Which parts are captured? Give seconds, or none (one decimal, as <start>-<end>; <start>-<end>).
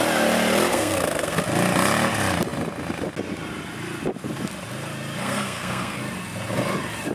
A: 0.0-0.7; 1.4-5.2; 6.0-7.1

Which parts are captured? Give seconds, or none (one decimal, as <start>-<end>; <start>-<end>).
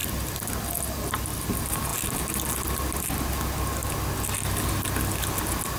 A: 0.0-5.8